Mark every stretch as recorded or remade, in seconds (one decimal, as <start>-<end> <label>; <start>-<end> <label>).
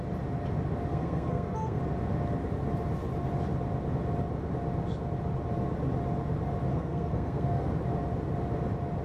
0.0-0.9 recorded; 0.9-1.8 remade; 1.8-6.7 recorded; 6.7-7.7 remade; 7.7-9.0 recorded